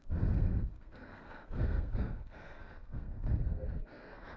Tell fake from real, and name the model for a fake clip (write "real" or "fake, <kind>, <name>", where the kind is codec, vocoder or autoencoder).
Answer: fake, codec, SNAC